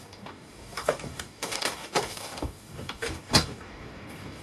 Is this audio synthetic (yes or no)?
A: yes